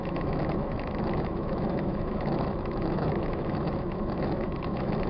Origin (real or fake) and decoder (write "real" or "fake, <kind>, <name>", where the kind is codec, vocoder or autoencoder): fake, autoencoder, DAC-VAE